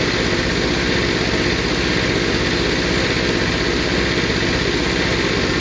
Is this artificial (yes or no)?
no